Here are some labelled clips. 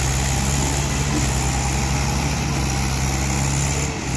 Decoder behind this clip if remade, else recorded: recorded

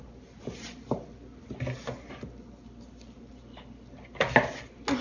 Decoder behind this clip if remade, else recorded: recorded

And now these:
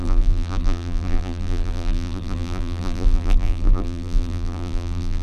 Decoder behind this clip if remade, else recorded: remade, vocoder, BigVGAN v2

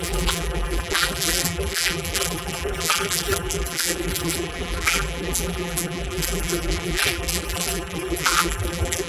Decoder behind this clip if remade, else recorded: remade, vocoder, BigVGAN v2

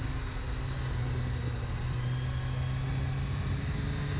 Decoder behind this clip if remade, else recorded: recorded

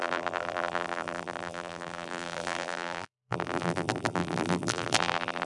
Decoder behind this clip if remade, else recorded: remade, vocoder, BigVGAN v2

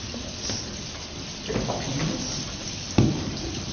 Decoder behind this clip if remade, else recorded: remade, vocoder, BigVGAN v2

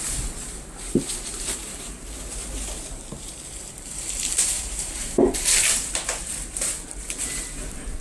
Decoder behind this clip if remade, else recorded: remade, vocoder, BigVGAN v2